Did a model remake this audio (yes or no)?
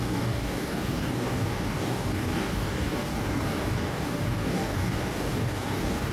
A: yes